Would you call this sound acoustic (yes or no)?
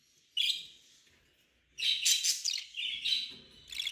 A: yes